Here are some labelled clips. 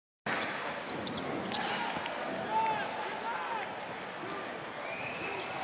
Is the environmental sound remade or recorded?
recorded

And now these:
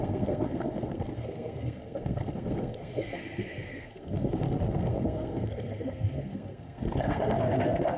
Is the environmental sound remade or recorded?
remade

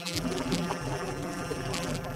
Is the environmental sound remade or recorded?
remade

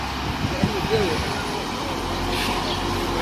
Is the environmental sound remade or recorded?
recorded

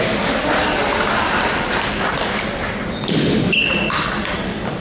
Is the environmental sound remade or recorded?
recorded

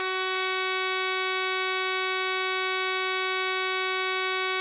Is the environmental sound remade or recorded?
recorded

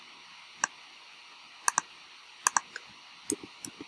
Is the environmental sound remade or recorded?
recorded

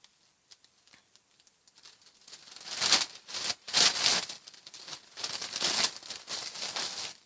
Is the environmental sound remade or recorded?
recorded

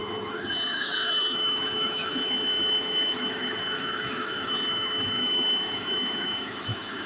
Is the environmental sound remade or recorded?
remade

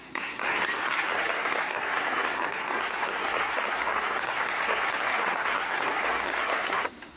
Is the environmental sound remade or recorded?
remade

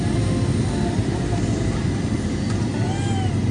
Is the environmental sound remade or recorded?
recorded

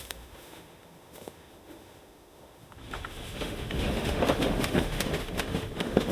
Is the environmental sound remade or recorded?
remade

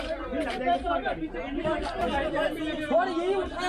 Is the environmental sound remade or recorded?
recorded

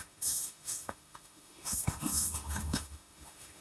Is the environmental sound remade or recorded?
remade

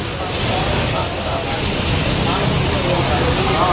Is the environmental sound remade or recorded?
recorded